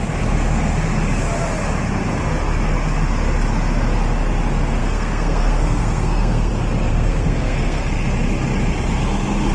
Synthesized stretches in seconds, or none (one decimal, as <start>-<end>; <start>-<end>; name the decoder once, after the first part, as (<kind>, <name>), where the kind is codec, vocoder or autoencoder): 4.8-6.5 (codec, SNAC); 6.9-7.8

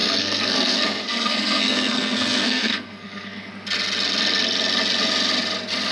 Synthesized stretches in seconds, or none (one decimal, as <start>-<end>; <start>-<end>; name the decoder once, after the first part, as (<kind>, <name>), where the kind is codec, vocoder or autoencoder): 0.0-3.5 (codec, SNAC)

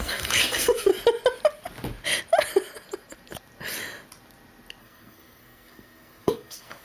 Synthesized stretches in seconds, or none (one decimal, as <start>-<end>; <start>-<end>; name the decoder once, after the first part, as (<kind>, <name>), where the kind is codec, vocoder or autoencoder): 0.0-0.9 (codec, SNAC); 4.8-6.8

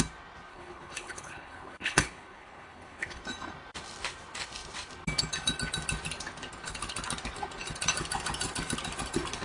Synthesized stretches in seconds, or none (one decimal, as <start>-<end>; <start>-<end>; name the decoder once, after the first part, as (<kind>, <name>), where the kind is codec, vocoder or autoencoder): 0.5-3.2 (codec, HILCodec)

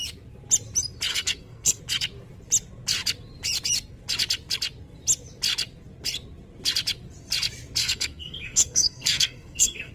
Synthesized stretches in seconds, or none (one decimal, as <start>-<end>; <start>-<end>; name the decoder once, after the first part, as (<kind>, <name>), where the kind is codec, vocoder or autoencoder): 1.1-1.8 (codec, SNAC); 7.8-9.9